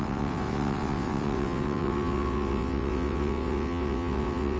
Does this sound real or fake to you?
fake